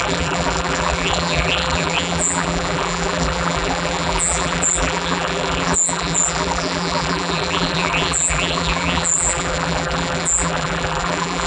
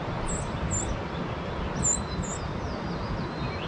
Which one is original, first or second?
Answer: second